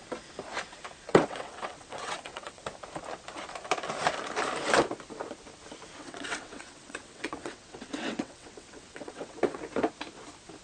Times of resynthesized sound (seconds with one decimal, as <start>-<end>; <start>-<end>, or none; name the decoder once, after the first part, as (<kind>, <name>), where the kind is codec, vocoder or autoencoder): 1.1-2.6 (vocoder, WaveNeXt); 6.0-9.6